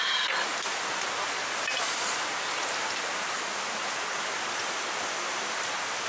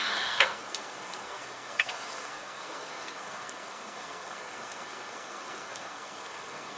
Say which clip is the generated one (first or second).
second